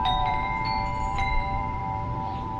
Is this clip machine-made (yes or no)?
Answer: yes